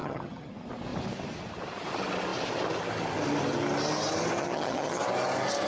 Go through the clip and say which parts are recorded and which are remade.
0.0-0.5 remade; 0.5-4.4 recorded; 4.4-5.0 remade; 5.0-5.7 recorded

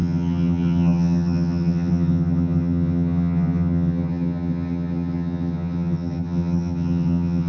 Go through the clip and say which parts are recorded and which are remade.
0.0-7.5 remade

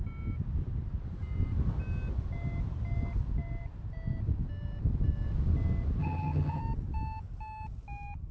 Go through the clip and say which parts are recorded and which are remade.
0.0-6.0 recorded; 6.0-6.6 remade; 6.6-8.3 recorded

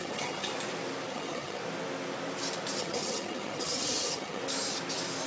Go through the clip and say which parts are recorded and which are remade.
0.0-0.5 remade; 0.5-1.1 recorded; 1.1-1.6 remade; 1.6-2.8 recorded; 2.8-4.4 remade; 4.4-5.3 recorded

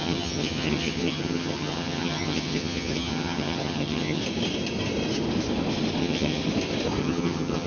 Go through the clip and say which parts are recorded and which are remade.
0.0-4.2 remade; 4.2-6.0 recorded; 6.0-6.4 remade; 6.4-7.0 recorded; 7.0-7.7 remade

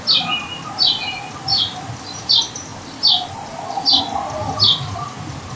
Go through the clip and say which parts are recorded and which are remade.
0.0-5.6 recorded